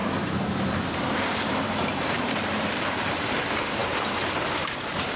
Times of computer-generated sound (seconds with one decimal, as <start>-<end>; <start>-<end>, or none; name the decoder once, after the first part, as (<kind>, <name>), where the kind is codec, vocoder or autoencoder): 0.0-5.2 (vocoder, BigVGAN v2)